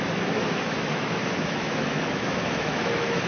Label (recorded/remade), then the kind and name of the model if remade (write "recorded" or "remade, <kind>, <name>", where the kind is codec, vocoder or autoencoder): remade, autoencoder, DAC-VAE